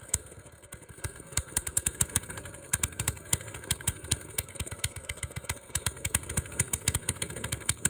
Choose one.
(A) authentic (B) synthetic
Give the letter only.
B